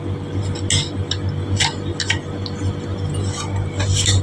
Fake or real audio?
real